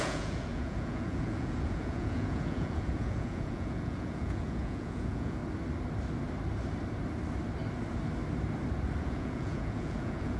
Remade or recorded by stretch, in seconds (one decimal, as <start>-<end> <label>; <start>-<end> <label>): 0.0-5.4 remade; 5.4-9.0 recorded; 9.0-10.4 remade